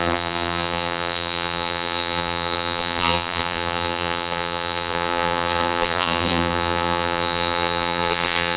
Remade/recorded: remade